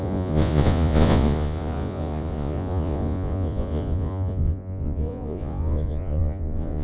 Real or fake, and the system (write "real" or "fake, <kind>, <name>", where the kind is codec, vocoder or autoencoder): fake, vocoder, Vocos